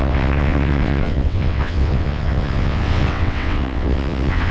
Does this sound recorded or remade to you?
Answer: remade